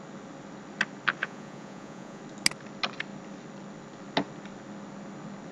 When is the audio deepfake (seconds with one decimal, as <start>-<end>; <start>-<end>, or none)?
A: 1.2-2.2